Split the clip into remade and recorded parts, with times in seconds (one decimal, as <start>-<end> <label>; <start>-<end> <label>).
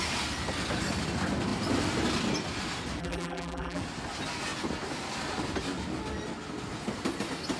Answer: 0.0-3.0 recorded; 3.0-3.8 remade; 3.8-7.6 recorded